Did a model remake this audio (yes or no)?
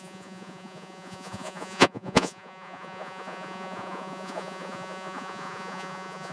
yes